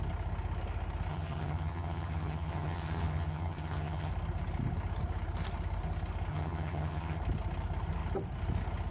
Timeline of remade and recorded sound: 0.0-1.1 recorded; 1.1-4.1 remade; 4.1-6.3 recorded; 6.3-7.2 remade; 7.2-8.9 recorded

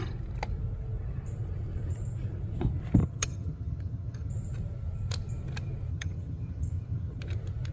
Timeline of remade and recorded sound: 0.0-3.0 recorded; 3.0-4.3 remade; 4.3-5.9 recorded; 5.9-7.2 remade; 7.2-7.7 recorded

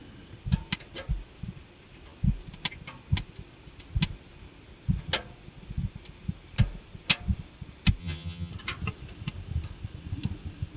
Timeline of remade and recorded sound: 0.0-8.0 recorded; 8.0-8.5 remade; 8.5-10.8 recorded

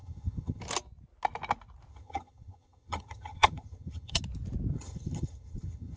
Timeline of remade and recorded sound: 0.0-0.6 remade; 0.6-1.9 recorded; 1.9-4.2 remade; 4.2-4.7 recorded; 4.7-6.0 remade

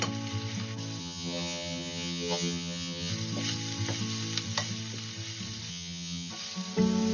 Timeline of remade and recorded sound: 0.0-1.0 recorded; 1.0-3.1 remade; 3.1-5.7 recorded; 5.7-6.3 remade; 6.3-7.1 recorded

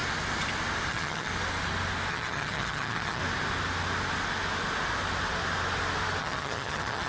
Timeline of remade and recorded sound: 0.0-0.9 recorded; 0.9-1.3 remade; 1.3-2.1 recorded; 2.1-3.2 remade; 3.2-6.2 recorded; 6.2-7.1 remade